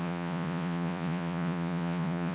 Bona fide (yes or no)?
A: no